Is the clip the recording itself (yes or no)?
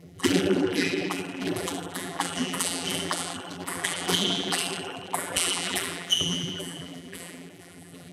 no